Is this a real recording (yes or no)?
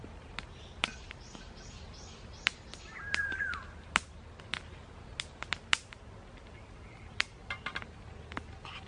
yes